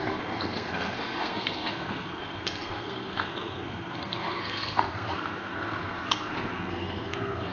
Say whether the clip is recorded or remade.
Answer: remade